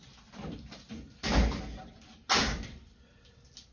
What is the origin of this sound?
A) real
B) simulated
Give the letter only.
A